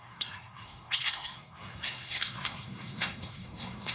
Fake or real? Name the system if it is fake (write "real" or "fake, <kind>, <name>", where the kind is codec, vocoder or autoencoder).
fake, codec, SNAC